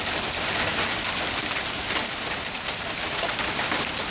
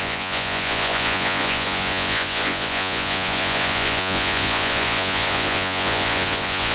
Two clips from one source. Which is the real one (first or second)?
first